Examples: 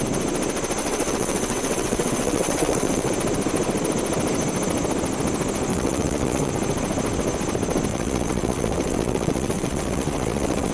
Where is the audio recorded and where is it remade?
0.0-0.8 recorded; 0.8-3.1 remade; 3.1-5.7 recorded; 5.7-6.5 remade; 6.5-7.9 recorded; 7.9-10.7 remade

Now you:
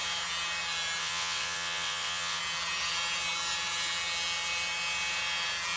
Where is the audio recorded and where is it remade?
0.0-1.0 recorded; 1.0-2.4 remade; 2.4-5.8 recorded

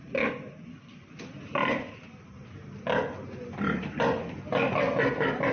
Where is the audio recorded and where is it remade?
0.0-5.5 recorded